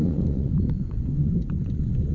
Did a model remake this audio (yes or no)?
yes